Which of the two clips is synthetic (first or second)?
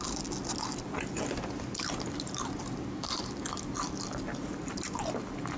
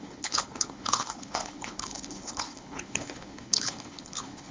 second